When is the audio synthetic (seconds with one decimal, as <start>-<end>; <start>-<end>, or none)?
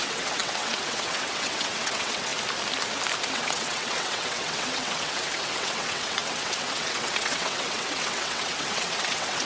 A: 0.0-2.3; 3.3-9.4